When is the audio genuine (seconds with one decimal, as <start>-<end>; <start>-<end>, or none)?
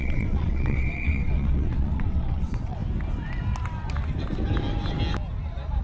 2.8-5.8